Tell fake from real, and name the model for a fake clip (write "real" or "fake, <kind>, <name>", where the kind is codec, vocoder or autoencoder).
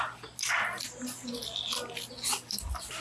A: real